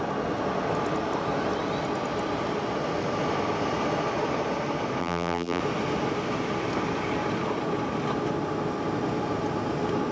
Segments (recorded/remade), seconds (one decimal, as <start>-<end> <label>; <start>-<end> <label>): 0.0-5.0 recorded; 5.0-5.6 remade; 5.6-10.1 recorded

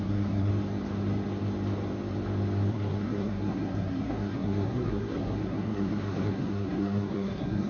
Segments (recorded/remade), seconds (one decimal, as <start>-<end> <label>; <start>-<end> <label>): 0.0-0.5 remade; 0.5-2.7 recorded; 2.7-7.7 remade

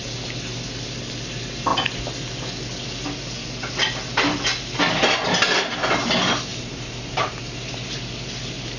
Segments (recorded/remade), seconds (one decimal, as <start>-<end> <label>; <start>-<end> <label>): 0.0-6.5 recorded; 6.5-7.4 remade; 7.4-8.8 recorded

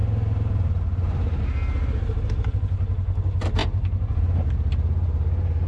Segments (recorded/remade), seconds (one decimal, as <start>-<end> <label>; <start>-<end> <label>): 0.0-1.4 remade; 1.4-5.7 recorded

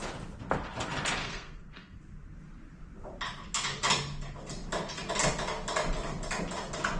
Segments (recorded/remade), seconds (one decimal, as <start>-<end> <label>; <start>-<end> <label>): 0.0-1.2 recorded; 1.2-2.0 remade; 2.0-7.0 recorded

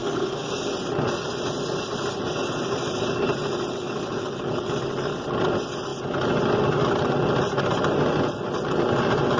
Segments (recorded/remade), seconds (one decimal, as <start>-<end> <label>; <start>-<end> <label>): 0.0-0.5 remade; 0.5-9.4 recorded

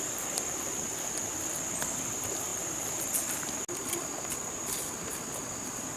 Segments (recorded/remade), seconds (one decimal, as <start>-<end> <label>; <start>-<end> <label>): 0.0-6.0 recorded

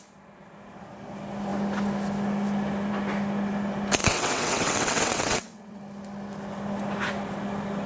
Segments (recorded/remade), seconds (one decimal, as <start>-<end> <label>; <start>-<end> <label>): 0.0-4.0 recorded; 4.0-5.8 remade; 5.8-7.9 recorded